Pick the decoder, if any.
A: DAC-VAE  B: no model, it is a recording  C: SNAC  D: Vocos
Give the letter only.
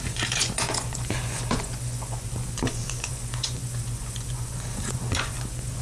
D